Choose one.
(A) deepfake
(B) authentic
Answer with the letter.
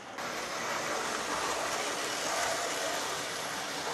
B